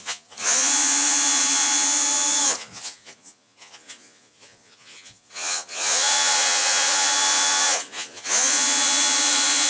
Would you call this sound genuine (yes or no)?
no